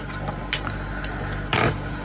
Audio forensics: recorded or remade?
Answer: recorded